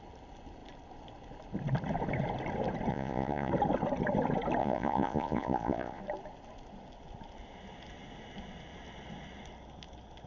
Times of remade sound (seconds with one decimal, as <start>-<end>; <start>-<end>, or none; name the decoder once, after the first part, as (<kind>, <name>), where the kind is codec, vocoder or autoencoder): 2.9-3.5 (vocoder, Vocos); 4.6-6.0